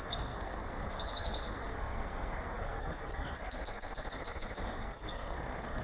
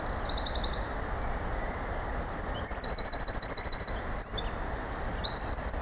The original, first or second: second